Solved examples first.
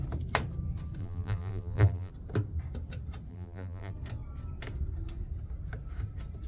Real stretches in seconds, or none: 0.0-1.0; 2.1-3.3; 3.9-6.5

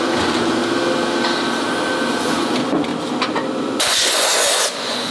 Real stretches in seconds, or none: 0.6-2.2; 2.9-3.6

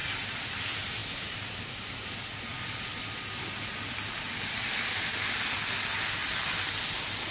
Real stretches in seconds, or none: 0.0-7.3

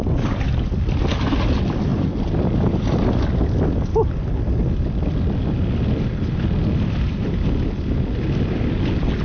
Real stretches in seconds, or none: 0.0-9.2

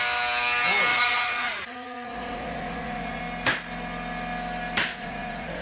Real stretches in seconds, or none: 0.0-0.9; 3.2-4.9